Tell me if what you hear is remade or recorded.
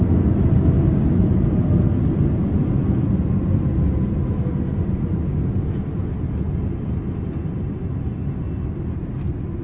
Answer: recorded